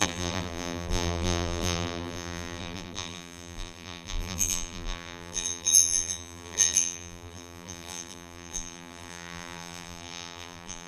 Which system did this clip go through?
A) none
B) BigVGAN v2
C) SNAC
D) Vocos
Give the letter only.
B